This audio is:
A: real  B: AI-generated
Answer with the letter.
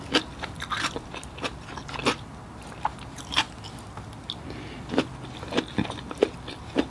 A